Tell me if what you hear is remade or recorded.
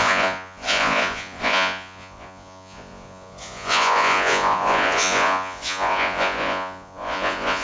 remade